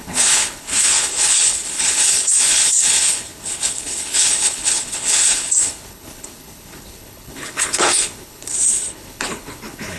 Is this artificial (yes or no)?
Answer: yes